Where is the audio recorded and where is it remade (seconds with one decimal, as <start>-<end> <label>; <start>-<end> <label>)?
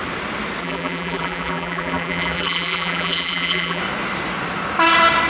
0.0-0.6 recorded; 0.6-3.8 remade; 3.8-5.3 recorded